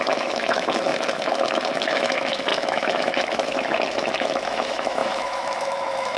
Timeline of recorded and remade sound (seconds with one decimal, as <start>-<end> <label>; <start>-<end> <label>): 0.0-6.2 remade